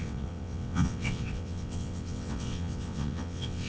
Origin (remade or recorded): remade